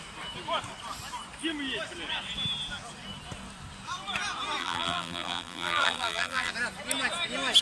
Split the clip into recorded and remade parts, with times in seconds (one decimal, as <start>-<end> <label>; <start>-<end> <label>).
0.0-4.6 recorded; 4.6-6.5 remade; 6.5-7.6 recorded